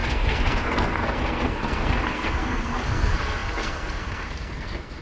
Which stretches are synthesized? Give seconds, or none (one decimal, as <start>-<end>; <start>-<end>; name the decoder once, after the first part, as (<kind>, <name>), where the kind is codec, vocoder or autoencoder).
0.0-5.0 (codec, SNAC)